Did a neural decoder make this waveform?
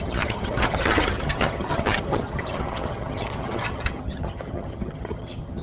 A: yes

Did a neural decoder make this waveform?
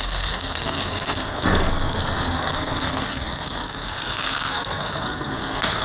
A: yes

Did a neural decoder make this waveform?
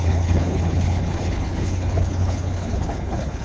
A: yes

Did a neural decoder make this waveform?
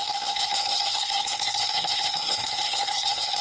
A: yes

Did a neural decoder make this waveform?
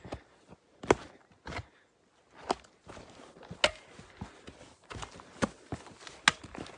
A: no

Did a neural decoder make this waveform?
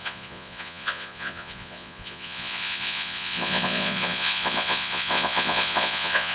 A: yes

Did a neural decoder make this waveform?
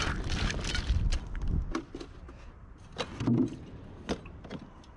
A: no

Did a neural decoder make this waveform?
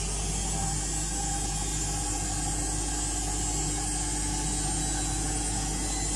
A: no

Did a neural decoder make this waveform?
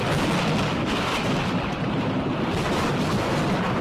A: no